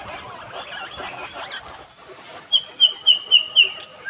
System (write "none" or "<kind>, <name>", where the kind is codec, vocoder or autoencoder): none